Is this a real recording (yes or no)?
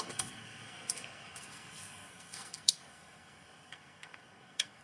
no